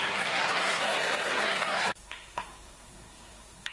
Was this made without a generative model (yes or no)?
no